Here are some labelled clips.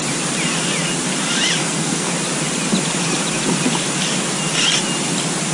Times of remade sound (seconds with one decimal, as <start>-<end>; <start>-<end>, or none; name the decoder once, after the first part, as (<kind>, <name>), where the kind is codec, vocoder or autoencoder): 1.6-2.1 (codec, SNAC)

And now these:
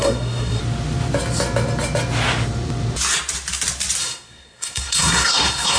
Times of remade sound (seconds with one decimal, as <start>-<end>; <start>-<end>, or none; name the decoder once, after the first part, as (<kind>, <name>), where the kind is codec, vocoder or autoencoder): 0.0-0.6 (codec, SNAC); 4.0-5.8

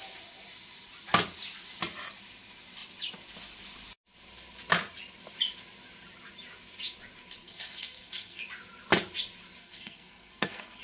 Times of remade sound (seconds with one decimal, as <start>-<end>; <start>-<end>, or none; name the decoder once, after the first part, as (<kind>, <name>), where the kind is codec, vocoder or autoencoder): 7.4-8.4 (codec, SNAC); 9.6-10.8